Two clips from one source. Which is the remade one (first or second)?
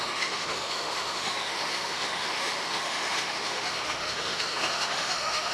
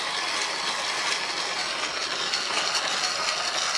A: first